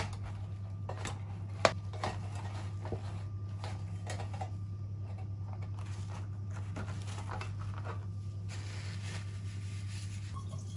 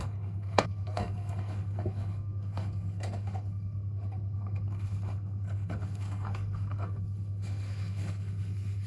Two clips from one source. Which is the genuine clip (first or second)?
first